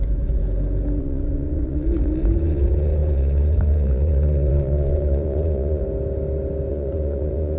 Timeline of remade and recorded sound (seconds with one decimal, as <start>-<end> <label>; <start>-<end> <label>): 0.0-0.4 remade; 0.4-1.0 recorded; 1.0-5.8 remade; 5.8-6.7 recorded; 6.7-7.6 remade